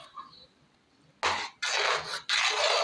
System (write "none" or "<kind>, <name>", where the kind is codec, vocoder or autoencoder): none